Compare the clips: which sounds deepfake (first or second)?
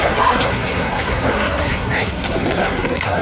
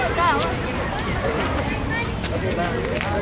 first